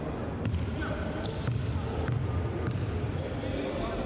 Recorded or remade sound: recorded